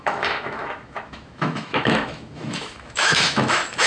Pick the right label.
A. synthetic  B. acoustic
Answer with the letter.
A